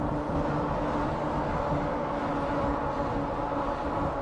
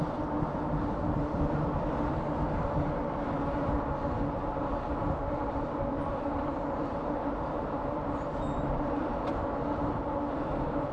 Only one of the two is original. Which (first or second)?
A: first